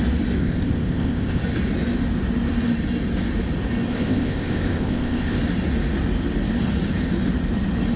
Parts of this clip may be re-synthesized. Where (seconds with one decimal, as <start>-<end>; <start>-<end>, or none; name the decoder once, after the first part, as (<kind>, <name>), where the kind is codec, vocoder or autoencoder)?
0.4-1.4 (codec, ZipCodec); 3.9-5.4